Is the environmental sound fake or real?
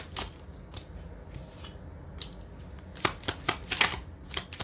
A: real